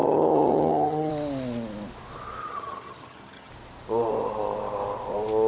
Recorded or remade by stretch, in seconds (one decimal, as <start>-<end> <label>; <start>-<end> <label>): 0.0-1.1 remade; 1.1-2.4 recorded; 2.4-3.5 remade; 3.5-5.5 recorded

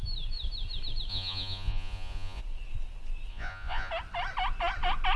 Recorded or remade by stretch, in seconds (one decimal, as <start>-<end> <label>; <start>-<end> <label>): 0.0-1.1 recorded; 1.1-2.4 remade; 2.4-3.3 recorded; 3.3-3.9 remade; 3.9-5.2 recorded

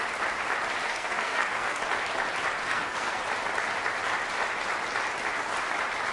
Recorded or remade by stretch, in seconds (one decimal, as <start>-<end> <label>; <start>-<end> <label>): 0.0-0.8 recorded; 0.8-1.8 remade; 1.8-2.6 recorded; 2.6-3.2 remade; 3.2-6.1 recorded

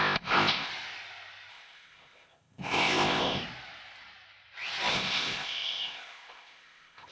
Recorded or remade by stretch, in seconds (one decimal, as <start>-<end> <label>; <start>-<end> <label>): 0.0-0.7 remade; 0.7-1.5 recorded; 1.5-3.4 remade; 3.4-4.9 recorded; 4.9-7.1 remade

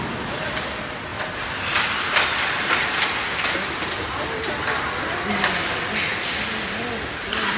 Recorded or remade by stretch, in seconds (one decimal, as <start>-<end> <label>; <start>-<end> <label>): 0.0-7.6 recorded